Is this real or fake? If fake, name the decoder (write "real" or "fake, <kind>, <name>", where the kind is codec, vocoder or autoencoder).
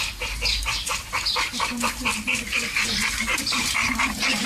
real